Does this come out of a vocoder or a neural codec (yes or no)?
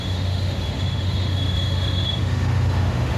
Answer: yes